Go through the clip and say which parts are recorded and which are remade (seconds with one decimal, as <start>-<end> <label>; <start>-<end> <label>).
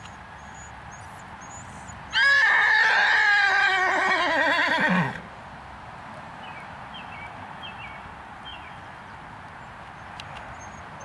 0.0-8.5 recorded; 8.5-9.0 remade; 9.0-11.0 recorded